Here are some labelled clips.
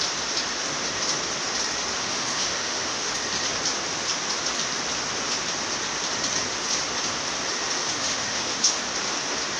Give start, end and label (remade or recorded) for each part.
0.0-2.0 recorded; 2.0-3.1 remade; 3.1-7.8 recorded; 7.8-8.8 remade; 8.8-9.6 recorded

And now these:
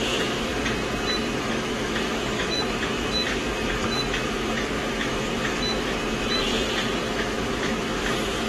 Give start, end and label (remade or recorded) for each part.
0.0-0.5 remade; 0.5-1.1 recorded; 1.1-6.5 remade; 6.5-7.1 recorded; 7.1-8.5 remade

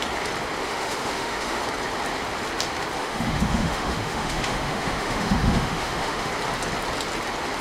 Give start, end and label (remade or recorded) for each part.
0.0-0.6 recorded; 0.6-1.6 remade; 1.6-3.0 recorded; 3.0-6.3 remade; 6.3-7.6 recorded

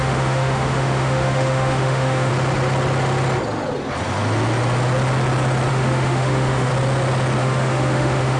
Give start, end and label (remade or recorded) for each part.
0.0-2.3 remade; 2.3-5.7 recorded; 5.7-6.7 remade; 6.7-7.4 recorded; 7.4-8.4 remade

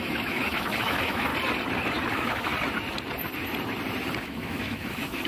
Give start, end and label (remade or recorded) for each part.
0.0-1.3 remade; 1.3-2.1 recorded; 2.1-2.5 remade; 2.5-4.2 recorded; 4.2-5.3 remade